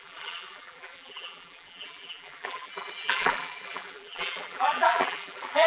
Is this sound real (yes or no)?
no